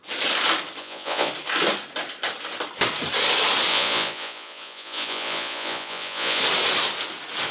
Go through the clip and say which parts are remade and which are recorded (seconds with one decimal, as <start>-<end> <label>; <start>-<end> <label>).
0.0-0.8 recorded; 0.8-1.3 remade; 1.3-3.7 recorded; 3.7-6.4 remade; 6.4-7.5 recorded